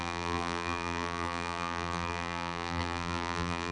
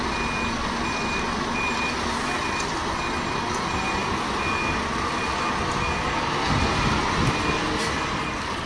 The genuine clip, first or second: second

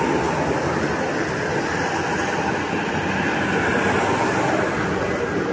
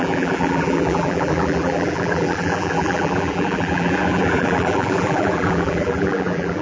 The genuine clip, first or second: first